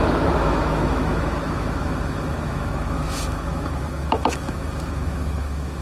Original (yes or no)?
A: no